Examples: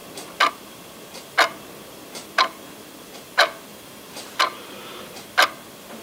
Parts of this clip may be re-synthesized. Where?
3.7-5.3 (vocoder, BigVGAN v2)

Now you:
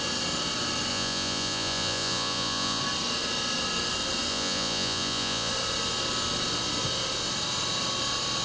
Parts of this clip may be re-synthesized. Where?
0.9-2.8 (vocoder, Vocos); 4.3-5.5

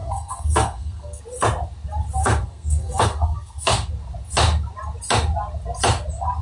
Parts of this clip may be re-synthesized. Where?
0.0-1.2 (codec, SNAC); 2.2-3.9